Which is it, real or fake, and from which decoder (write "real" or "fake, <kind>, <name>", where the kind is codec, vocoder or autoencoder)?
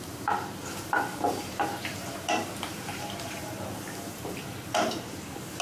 fake, vocoder, BigVGAN v2